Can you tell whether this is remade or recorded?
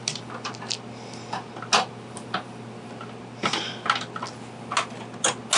recorded